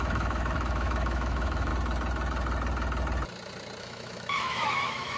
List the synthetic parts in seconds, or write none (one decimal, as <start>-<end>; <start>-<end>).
0.0-1.7; 3.8-5.2